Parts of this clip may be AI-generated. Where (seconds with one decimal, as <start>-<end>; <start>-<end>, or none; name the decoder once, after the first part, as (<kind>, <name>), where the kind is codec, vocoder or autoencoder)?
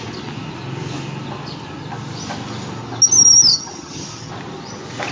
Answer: 3.5-4.3 (vocoder, HiFi-GAN)